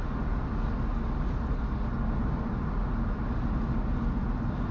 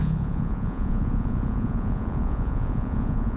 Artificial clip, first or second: second